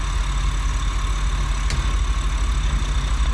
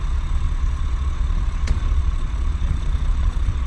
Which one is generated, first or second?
second